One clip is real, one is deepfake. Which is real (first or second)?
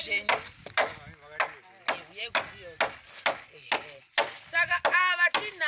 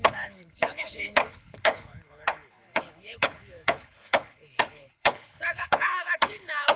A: first